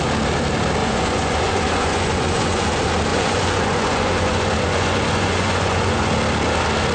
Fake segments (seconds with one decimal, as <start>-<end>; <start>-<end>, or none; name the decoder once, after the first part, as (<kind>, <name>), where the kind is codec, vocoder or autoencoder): 0.8-2.7 (vocoder, Vocos); 3.1-6.1